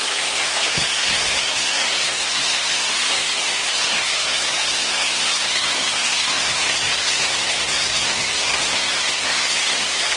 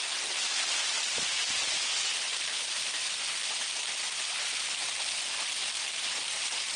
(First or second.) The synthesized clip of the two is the first